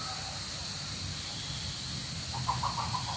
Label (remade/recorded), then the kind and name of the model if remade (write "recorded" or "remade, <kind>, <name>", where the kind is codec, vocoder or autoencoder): recorded